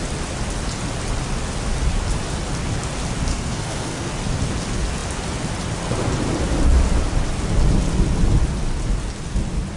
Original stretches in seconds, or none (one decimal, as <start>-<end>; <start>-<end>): 0.0-3.3; 4.1-9.8